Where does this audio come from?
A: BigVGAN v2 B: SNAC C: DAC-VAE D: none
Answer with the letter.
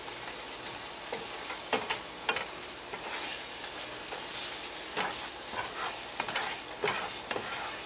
D